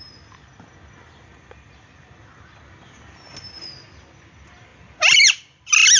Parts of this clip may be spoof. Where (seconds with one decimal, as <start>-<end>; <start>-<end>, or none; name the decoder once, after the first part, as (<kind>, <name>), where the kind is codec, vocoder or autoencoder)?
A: none